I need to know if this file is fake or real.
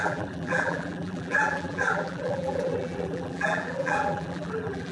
fake